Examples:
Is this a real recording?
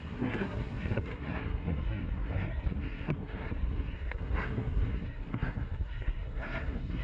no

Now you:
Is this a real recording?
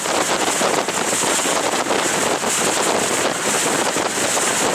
yes